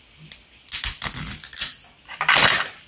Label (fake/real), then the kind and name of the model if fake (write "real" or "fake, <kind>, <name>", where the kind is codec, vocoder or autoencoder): real